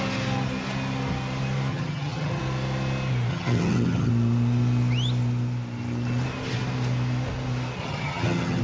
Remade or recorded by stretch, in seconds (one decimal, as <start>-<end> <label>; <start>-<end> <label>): 0.0-1.7 recorded; 1.7-2.4 remade; 2.4-3.3 recorded; 3.3-4.1 remade; 4.1-7.8 recorded; 7.8-8.6 remade